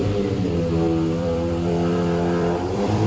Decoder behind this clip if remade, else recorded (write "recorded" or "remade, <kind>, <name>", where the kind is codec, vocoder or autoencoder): remade, vocoder, BigVGAN v2